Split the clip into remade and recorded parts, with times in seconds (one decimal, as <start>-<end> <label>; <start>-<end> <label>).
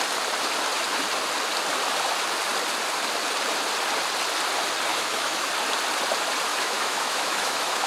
0.0-4.9 recorded; 4.9-5.5 remade; 5.5-6.5 recorded; 6.5-7.9 remade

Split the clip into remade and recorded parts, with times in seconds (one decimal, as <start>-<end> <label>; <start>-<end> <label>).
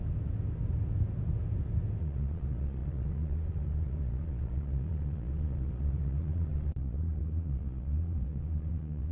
0.0-2.0 recorded; 2.0-9.1 remade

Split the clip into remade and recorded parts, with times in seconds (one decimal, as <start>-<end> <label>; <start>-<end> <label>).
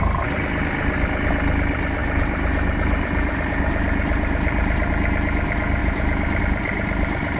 0.0-2.0 recorded; 2.0-4.9 remade; 4.9-5.8 recorded; 5.8-6.4 remade; 6.4-7.4 recorded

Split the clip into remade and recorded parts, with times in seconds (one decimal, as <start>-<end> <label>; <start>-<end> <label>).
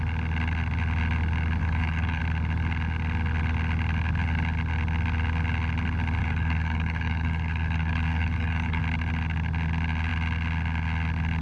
0.0-1.6 recorded; 1.6-2.2 remade; 2.2-6.2 recorded; 6.2-8.8 remade; 8.8-11.4 recorded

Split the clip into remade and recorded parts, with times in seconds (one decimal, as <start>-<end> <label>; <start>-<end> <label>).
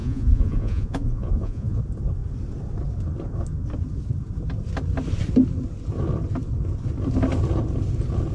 0.0-1.8 remade; 1.8-8.3 recorded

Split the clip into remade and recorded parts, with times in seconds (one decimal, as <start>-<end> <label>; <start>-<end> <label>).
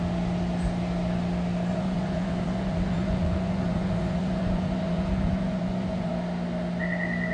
0.0-1.7 recorded; 1.7-6.1 remade; 6.1-7.3 recorded